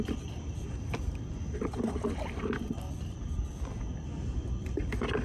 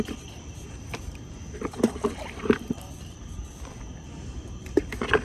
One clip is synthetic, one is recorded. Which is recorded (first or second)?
first